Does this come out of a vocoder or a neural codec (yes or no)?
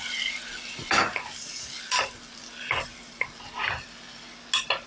no